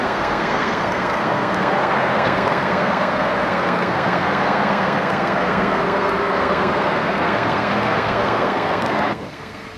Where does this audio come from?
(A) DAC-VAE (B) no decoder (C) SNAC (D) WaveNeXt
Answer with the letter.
C